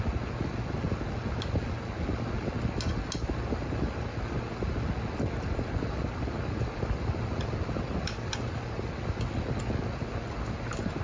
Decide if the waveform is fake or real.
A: real